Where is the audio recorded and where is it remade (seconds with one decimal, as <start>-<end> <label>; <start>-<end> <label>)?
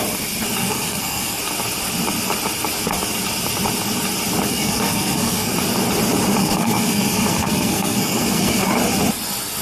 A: 0.0-0.6 recorded; 0.6-1.4 remade; 1.4-4.5 recorded; 4.5-5.5 remade; 5.5-6.4 recorded; 6.4-8.7 remade; 8.7-9.6 recorded